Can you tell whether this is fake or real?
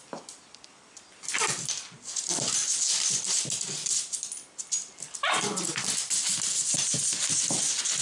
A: real